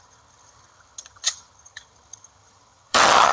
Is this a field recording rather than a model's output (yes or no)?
no